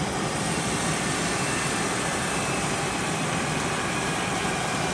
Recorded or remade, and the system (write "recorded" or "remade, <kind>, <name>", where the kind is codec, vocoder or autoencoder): remade, vocoder, BigVGAN v2